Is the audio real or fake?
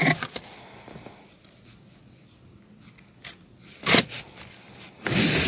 real